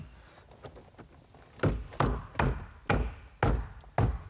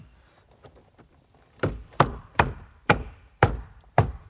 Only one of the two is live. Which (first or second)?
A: first